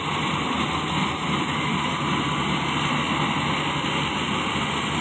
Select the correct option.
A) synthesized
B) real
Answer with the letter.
B